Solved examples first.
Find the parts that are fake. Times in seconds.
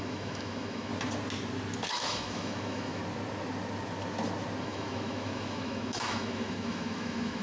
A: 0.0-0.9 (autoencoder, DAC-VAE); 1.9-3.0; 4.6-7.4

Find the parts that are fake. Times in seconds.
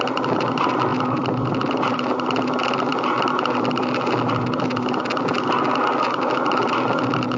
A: none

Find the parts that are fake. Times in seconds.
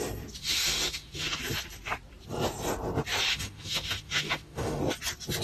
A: 0.4-1.4 (autoencoder, DAC-VAE); 3.3-4.8